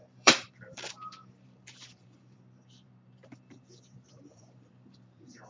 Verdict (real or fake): fake